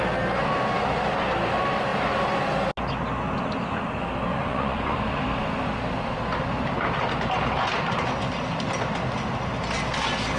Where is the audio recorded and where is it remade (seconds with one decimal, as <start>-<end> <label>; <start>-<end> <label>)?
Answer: 0.0-4.3 recorded; 4.3-5.2 remade; 5.2-10.4 recorded